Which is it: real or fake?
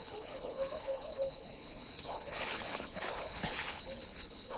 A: fake